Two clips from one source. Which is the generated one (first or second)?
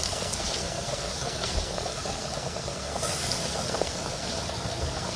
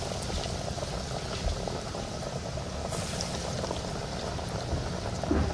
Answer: first